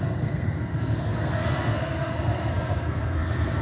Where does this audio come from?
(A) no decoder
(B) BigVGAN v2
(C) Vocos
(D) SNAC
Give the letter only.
D